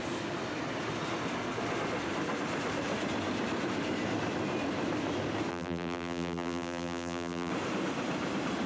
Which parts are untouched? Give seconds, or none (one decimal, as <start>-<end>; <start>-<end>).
0.0-5.5; 7.5-8.7